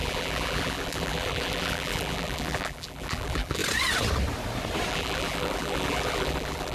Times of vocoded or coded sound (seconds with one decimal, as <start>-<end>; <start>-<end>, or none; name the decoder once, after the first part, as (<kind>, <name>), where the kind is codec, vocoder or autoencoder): 0.0-3.6 (vocoder, BigVGAN v2); 4.9-6.7